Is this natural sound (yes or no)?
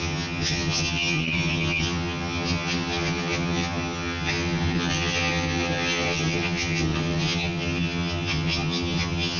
no